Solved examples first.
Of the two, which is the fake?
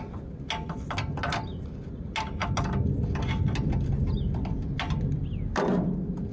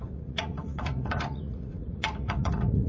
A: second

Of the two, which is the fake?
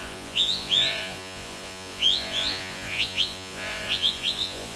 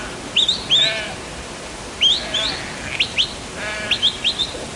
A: first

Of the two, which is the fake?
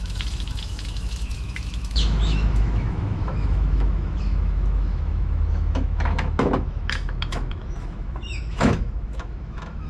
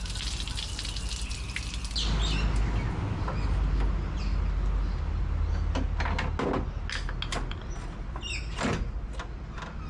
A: first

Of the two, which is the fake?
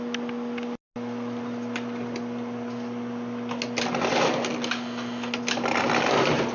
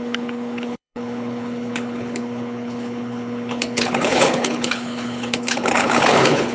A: second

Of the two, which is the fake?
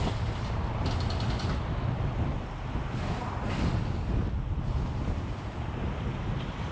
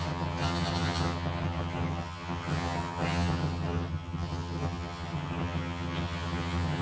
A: second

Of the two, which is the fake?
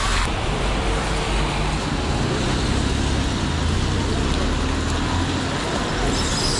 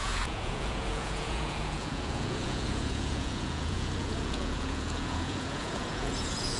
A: second